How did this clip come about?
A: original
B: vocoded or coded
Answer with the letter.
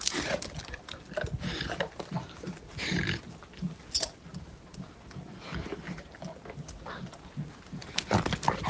A